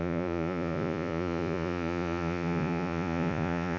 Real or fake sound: fake